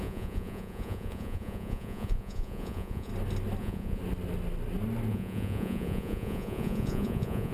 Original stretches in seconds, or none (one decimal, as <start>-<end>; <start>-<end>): 3.1-3.6; 4.0-5.1